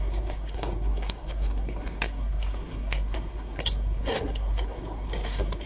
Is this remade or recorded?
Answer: remade